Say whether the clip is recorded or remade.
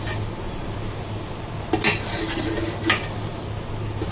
recorded